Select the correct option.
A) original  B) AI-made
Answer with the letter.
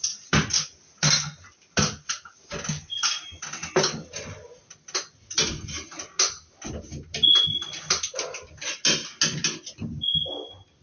A